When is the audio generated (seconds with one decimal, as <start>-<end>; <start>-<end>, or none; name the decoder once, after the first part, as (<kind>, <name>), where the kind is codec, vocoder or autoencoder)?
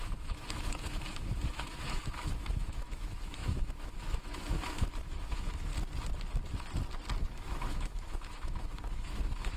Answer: 0.0-5.7 (autoencoder, DAC-VAE); 7.2-9.6